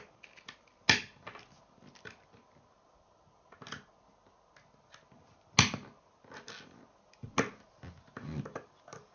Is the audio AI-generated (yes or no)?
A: no